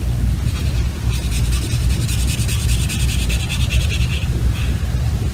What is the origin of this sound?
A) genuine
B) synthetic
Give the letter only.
A